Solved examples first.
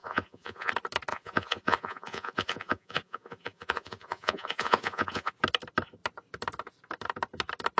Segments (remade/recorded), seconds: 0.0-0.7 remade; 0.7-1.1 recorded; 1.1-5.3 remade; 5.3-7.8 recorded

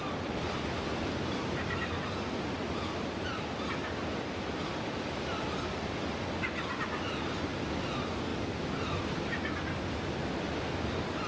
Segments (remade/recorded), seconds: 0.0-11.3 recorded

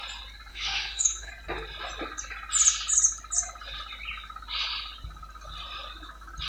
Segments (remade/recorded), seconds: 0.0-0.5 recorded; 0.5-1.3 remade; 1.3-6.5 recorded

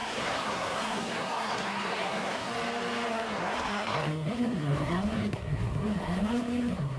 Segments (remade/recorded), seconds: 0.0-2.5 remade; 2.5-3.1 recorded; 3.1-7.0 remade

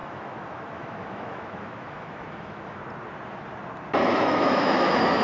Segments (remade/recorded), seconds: 0.0-2.8 remade; 2.8-4.0 recorded; 4.0-5.2 remade